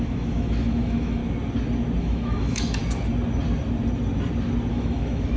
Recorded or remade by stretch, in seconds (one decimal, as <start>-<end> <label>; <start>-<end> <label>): 0.0-1.2 remade; 1.2-2.0 recorded; 2.0-2.8 remade; 2.8-4.7 recorded; 4.7-5.4 remade